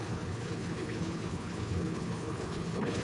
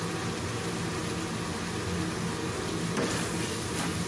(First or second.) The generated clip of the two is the first